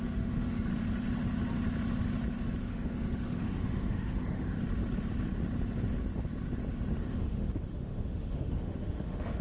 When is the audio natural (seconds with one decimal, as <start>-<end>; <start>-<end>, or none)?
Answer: 0.7-2.6; 4.6-7.0